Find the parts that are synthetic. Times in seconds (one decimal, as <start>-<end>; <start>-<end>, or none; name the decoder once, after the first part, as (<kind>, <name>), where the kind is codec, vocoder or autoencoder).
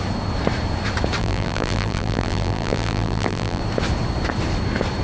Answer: 1.2-3.6 (vocoder, BigVGAN v2)